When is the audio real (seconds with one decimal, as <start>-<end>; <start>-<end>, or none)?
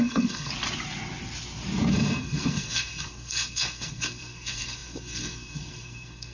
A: 0.5-1.9